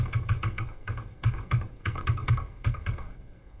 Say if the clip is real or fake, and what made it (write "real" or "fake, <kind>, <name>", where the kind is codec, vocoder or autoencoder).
fake, codec, SNAC